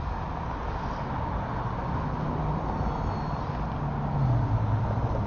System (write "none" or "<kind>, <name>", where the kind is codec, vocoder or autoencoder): none